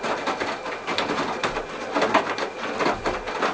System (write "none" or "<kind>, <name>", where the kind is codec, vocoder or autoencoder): none